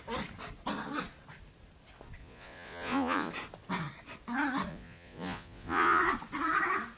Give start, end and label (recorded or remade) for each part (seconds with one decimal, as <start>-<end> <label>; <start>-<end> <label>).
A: 0.0-2.2 recorded; 2.2-3.3 remade; 3.3-4.7 recorded; 4.7-6.0 remade; 6.0-7.0 recorded